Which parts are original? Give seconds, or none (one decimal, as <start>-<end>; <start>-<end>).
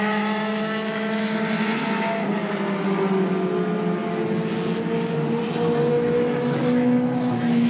1.3-5.9